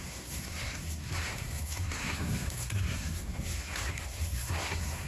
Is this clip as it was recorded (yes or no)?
no